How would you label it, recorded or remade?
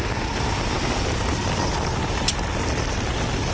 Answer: recorded